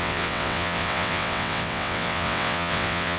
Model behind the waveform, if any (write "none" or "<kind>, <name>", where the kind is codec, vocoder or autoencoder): vocoder, WaveNeXt